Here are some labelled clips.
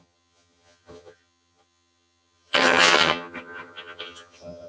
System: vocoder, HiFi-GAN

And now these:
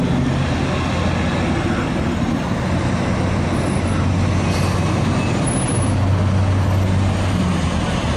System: none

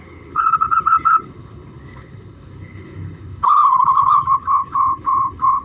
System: codec, HILCodec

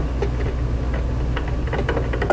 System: none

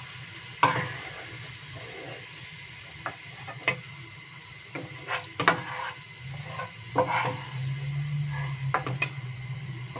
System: none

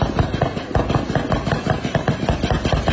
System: none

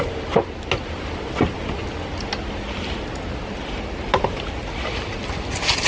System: none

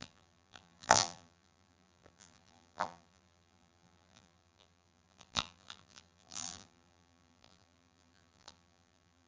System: vocoder, BigVGAN v2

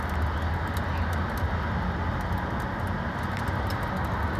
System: none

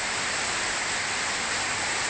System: none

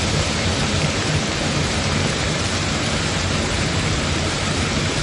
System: vocoder, BigVGAN v2